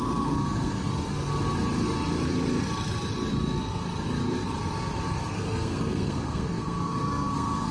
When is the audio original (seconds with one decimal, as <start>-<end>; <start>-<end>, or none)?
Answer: 0.9-5.3